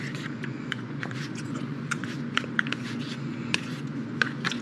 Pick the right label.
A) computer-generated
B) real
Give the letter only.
A